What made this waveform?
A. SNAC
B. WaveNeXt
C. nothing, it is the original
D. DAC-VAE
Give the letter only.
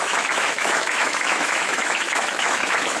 D